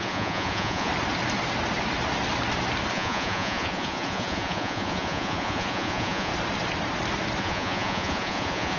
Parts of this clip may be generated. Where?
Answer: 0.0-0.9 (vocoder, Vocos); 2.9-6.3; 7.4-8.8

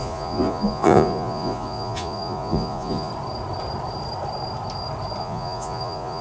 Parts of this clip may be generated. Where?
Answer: 0.0-3.1 (vocoder, Vocos); 5.2-6.2